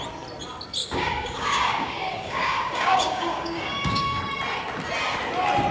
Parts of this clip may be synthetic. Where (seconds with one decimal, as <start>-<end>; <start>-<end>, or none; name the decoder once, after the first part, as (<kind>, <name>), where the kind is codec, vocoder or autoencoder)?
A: 0.8-4.2 (codec, DAC)